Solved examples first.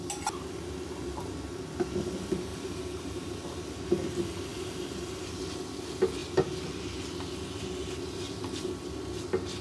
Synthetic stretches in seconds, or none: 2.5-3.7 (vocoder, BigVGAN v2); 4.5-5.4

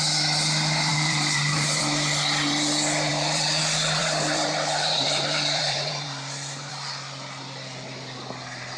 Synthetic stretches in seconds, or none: 0.9-1.8 (vocoder, BigVGAN v2); 3.1-3.6; 4.0-6.7

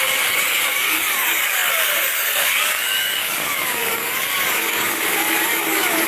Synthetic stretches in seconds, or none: 0.0-6.1 (codec, DAC)